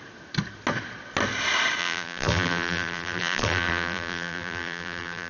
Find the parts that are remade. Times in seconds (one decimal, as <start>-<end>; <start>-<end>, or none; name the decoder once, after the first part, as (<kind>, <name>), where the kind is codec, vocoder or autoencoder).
1.8-5.3 (vocoder, BigVGAN v2)